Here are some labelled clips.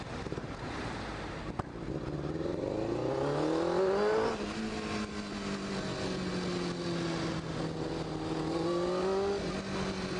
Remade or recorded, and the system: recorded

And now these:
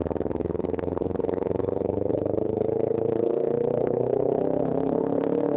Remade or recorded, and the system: remade, codec, SNAC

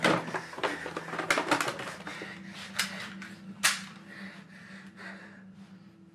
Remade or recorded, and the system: recorded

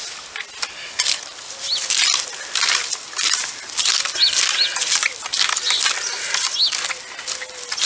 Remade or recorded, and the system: recorded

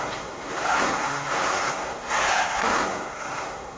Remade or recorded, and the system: remade, codec, SNAC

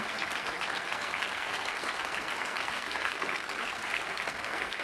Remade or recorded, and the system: remade, codec, SNAC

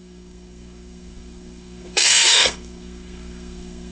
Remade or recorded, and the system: remade, codec, SNAC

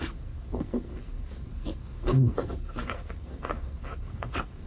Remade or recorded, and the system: remade, codec, SNAC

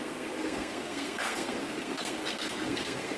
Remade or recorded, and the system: remade, codec, SNAC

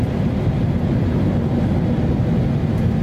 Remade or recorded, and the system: recorded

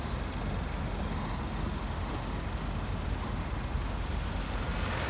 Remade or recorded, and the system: recorded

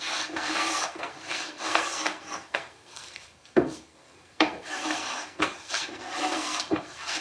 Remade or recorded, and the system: remade, codec, SNAC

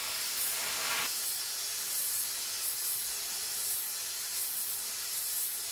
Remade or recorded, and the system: recorded